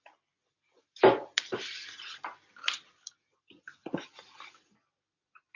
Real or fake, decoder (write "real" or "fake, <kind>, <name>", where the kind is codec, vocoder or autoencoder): real